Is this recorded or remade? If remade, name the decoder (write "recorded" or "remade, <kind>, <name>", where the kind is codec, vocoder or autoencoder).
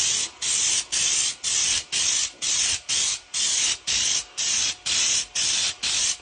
recorded